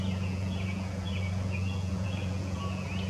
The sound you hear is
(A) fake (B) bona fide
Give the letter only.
A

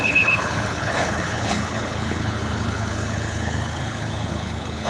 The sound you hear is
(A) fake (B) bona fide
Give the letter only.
A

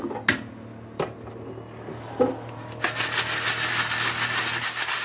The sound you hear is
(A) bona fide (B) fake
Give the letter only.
A